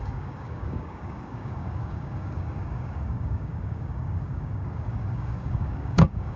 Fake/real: fake